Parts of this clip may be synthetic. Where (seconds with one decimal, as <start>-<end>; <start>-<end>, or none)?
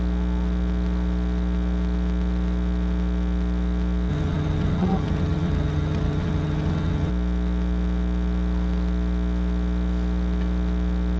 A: 4.1-7.1